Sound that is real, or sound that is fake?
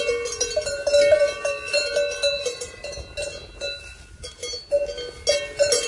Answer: real